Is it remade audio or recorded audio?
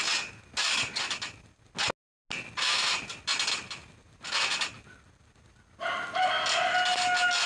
recorded